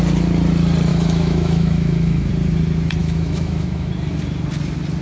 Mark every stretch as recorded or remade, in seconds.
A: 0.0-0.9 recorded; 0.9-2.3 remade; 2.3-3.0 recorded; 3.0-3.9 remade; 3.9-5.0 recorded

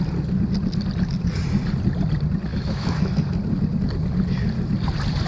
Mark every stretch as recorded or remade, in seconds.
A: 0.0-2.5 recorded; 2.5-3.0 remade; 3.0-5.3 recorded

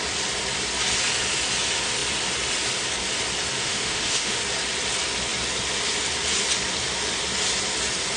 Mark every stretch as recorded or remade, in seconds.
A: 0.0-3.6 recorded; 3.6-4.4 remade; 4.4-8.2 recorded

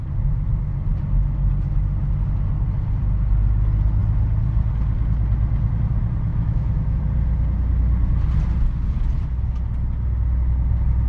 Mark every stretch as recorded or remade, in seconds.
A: 0.0-6.3 recorded; 6.3-7.0 remade; 7.0-11.1 recorded

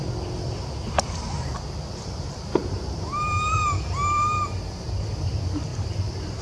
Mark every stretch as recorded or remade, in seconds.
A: 0.0-6.4 recorded

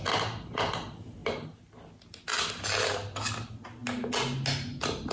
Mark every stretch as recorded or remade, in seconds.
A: 0.0-5.1 recorded

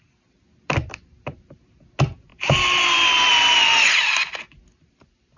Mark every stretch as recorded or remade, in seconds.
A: 0.0-5.4 recorded

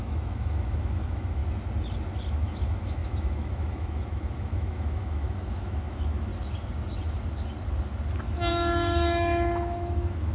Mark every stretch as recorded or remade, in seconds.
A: 0.0-1.4 remade; 1.4-2.3 recorded; 2.3-6.3 remade; 6.3-8.5 recorded; 8.5-10.3 remade